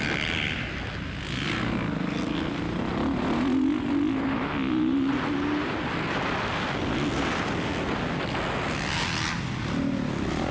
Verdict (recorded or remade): recorded